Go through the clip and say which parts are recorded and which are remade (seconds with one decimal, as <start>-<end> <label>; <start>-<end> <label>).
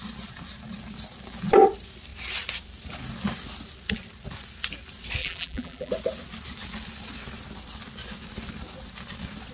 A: 0.0-5.2 recorded; 5.2-5.9 remade; 5.9-9.5 recorded